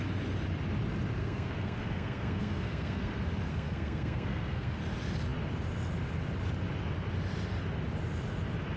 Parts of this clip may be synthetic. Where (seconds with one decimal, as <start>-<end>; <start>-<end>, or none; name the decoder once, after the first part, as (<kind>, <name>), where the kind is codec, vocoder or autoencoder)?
1.2-3.1 (codec, SNAC); 3.5-4.8